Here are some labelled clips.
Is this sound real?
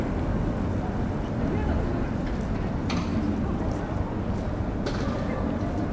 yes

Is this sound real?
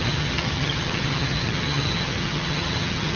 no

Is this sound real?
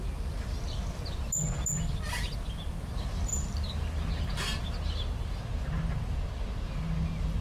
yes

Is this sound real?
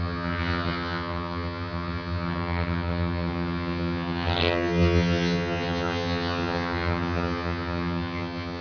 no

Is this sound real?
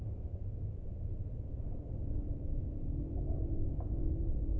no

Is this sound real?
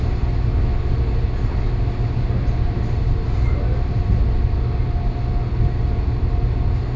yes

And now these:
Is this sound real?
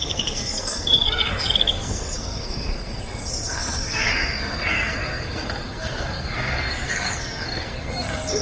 no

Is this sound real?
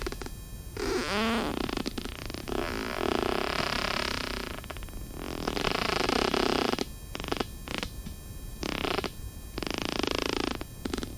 yes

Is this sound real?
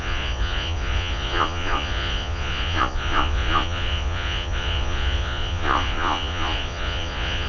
no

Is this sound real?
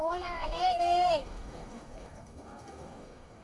no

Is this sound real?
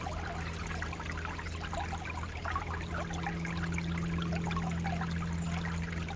yes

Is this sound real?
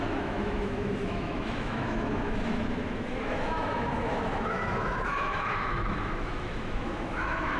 no